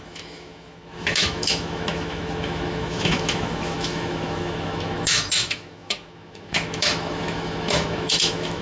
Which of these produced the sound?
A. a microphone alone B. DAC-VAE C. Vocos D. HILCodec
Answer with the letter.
B